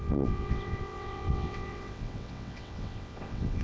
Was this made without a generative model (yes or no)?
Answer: no